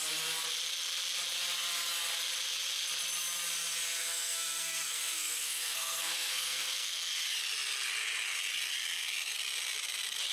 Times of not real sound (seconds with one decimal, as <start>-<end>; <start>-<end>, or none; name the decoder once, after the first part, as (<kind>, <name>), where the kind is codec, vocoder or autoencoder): 4.0-7.1 (codec, SNAC)